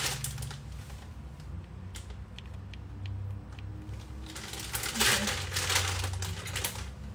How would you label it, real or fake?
real